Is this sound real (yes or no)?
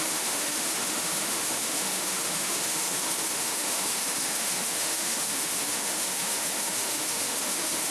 no